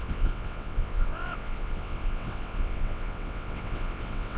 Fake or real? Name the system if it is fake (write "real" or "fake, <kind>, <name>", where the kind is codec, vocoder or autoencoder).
fake, vocoder, WaveNeXt